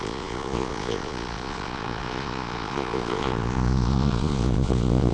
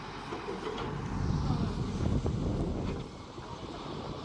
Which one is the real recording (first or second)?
second